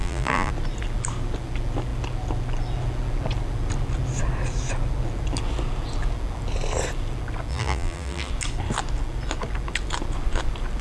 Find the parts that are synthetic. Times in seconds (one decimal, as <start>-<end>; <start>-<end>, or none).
0.0-0.5; 7.5-8.3